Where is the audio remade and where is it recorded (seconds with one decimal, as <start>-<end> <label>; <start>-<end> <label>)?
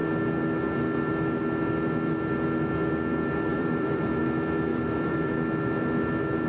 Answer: 0.0-3.5 recorded; 3.5-4.2 remade; 4.2-4.7 recorded; 4.7-5.3 remade; 5.3-6.5 recorded